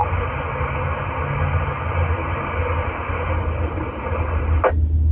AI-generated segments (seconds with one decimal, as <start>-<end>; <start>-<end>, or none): none